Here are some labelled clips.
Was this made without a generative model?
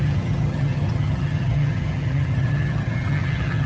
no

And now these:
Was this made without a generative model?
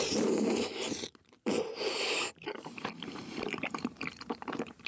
no